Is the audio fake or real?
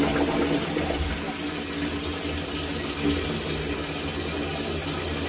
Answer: real